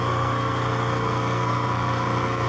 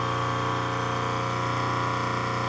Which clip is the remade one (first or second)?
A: first